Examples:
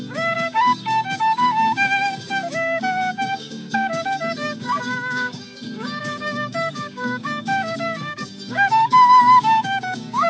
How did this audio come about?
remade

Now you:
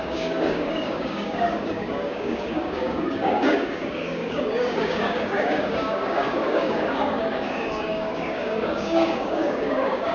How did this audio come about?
remade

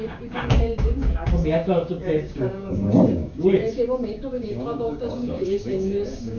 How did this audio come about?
remade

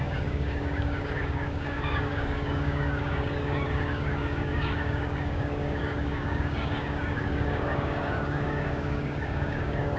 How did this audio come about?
remade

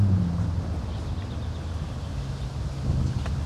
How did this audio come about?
recorded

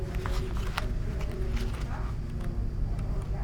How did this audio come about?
recorded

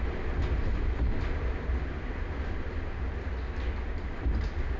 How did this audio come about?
recorded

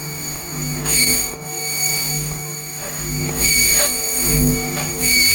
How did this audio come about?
remade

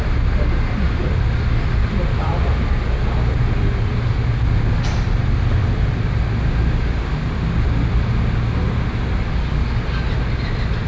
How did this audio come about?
recorded